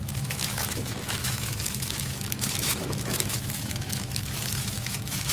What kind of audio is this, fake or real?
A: fake